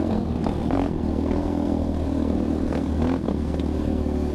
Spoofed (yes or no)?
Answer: yes